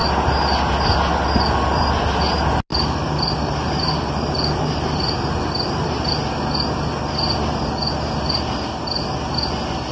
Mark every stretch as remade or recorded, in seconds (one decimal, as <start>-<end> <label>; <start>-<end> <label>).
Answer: 0.0-2.7 recorded; 2.7-6.1 remade; 6.1-9.9 recorded